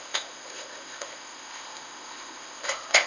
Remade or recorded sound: remade